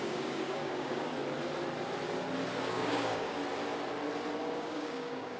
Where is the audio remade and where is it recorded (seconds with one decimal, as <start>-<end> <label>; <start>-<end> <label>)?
0.0-1.2 remade; 1.2-2.7 recorded; 2.7-3.4 remade; 3.4-4.4 recorded; 4.4-5.4 remade